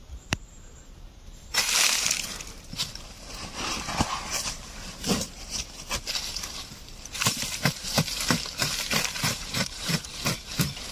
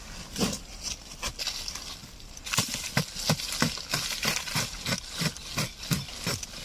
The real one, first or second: second